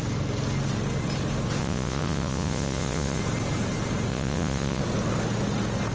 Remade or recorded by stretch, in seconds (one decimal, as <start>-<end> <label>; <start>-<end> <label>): 0.0-1.6 recorded; 1.6-3.2 remade; 3.2-4.1 recorded; 4.1-4.8 remade; 4.8-5.9 recorded